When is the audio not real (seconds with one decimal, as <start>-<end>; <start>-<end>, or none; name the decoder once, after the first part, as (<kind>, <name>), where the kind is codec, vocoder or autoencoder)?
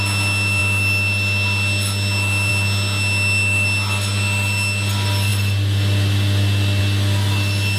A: none